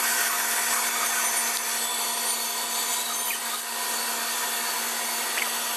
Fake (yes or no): no